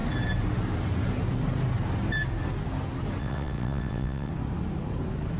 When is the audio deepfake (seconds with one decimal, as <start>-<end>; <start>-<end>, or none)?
3.2-4.3